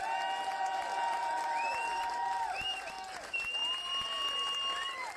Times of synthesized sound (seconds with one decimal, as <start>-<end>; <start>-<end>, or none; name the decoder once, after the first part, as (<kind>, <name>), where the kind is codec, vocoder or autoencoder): 0.9-2.9 (vocoder, BigVGAN v2)